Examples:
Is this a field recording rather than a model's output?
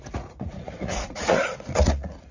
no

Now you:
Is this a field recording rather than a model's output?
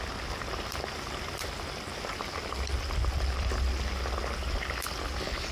yes